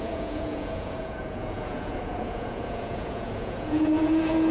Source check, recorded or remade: remade